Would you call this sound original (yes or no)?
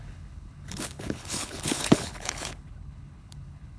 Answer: no